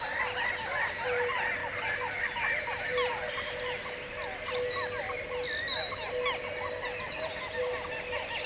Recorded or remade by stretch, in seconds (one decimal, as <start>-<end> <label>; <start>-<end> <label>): 0.0-8.5 recorded